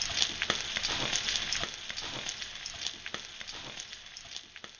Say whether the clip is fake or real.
real